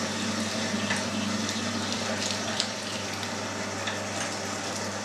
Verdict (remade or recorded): recorded